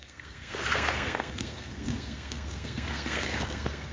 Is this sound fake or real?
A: fake